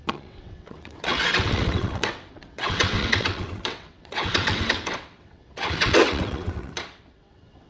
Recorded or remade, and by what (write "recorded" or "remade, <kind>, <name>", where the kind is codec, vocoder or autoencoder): remade, vocoder, WaveNeXt